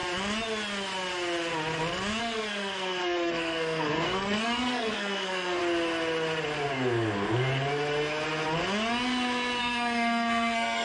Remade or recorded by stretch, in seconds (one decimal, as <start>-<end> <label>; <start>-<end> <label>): 0.0-2.2 recorded; 2.2-5.6 remade; 5.6-9.6 recorded; 9.6-10.8 remade